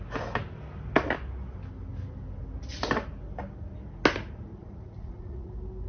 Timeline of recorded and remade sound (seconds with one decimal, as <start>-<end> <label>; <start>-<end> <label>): 0.0-4.6 recorded; 4.6-5.5 remade; 5.5-5.9 recorded